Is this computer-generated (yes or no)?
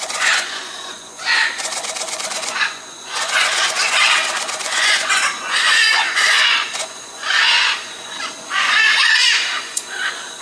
yes